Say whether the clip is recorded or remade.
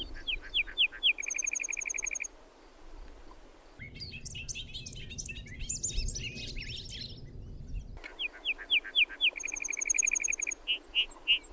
recorded